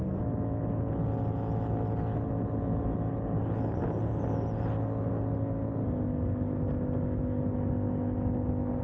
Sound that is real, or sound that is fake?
real